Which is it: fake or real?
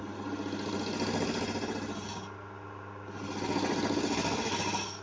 real